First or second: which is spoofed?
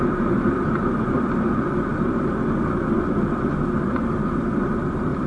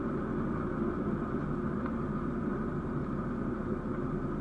first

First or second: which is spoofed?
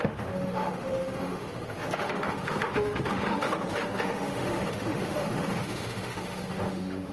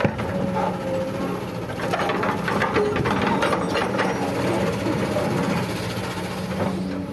first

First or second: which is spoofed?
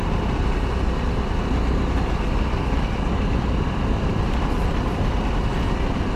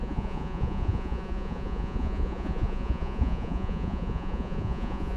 second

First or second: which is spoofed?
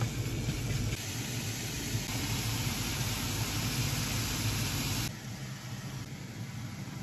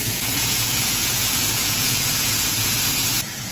second